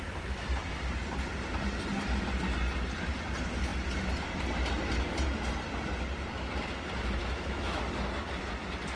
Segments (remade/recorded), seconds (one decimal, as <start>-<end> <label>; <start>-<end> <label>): 0.0-7.2 recorded; 7.2-7.8 remade; 7.8-9.0 recorded